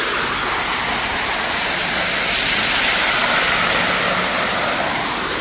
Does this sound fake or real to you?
real